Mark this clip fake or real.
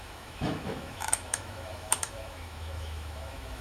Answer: fake